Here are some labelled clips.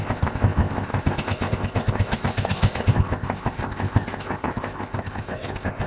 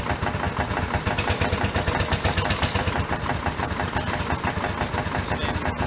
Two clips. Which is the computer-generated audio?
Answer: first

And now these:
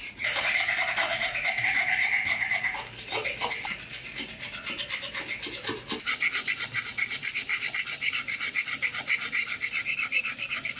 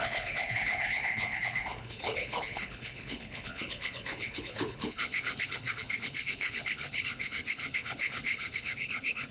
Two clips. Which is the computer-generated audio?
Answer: second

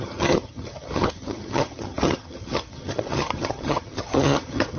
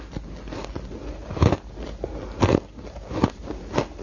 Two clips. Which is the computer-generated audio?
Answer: first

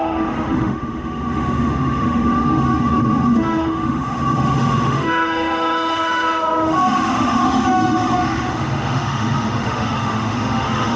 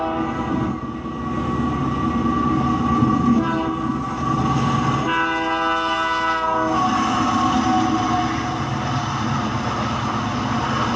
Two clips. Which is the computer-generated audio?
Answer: first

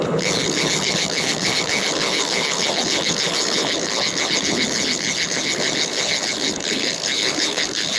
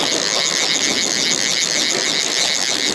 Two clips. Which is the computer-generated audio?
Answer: first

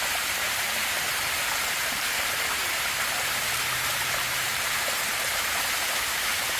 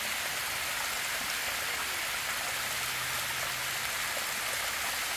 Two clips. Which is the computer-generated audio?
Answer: first